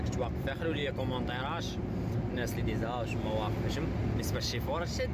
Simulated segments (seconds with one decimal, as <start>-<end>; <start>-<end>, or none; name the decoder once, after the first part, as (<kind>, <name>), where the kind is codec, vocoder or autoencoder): none